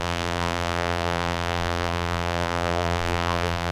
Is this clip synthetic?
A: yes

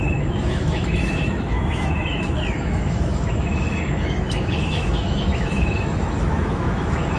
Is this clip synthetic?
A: yes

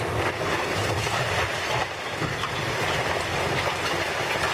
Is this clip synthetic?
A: no